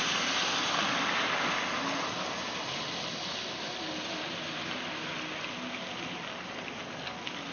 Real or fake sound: real